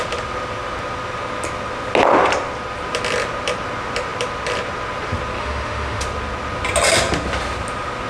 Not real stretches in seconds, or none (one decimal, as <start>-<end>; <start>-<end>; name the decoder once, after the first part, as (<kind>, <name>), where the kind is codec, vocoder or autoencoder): 5.4-6.0 (autoencoder, DAC-VAE)